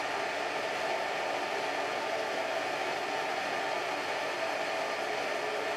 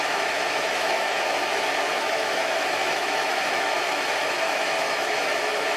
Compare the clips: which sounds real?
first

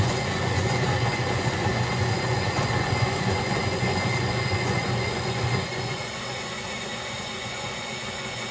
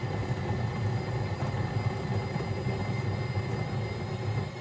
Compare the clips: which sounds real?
second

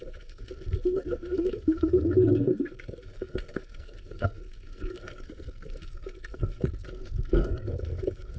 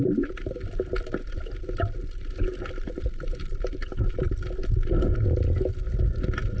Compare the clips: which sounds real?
second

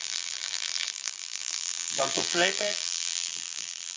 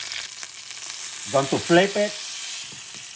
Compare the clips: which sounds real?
second